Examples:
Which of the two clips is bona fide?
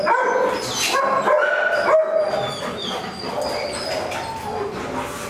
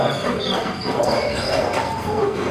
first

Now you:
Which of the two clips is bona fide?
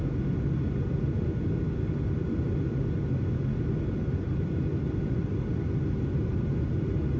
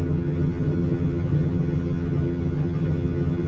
first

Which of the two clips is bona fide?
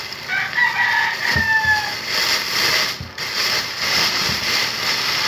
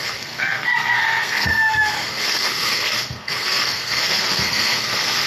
first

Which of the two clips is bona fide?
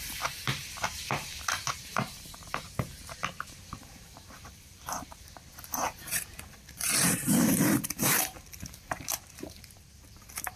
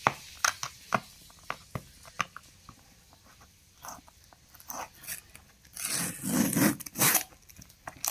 second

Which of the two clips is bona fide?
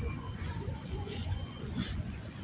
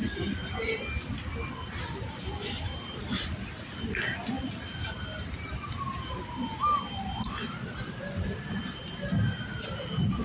second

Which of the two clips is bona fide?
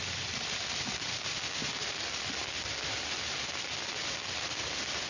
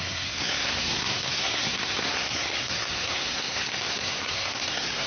first